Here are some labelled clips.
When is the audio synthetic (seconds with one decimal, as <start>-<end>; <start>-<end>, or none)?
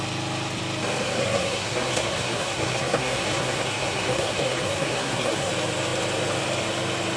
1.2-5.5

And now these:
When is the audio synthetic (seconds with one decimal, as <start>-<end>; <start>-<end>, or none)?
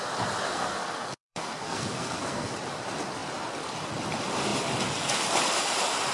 0.5-2.5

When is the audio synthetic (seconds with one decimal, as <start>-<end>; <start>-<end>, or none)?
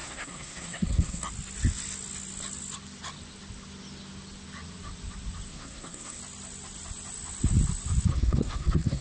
0.0-1.3; 5.5-6.2; 8.1-9.0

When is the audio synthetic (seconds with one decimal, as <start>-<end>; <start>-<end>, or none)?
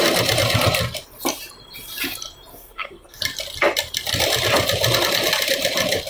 2.5-3.2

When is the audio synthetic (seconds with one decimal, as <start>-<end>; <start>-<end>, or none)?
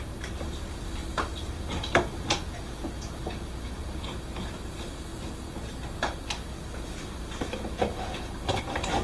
none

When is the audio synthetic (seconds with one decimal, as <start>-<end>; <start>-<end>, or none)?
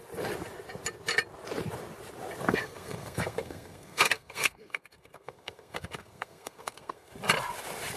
2.5-7.1